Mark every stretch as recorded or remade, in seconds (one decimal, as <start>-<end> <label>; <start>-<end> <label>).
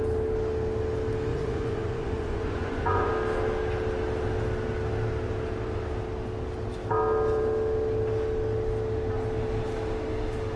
0.0-1.3 recorded; 1.3-3.1 remade; 3.1-10.6 recorded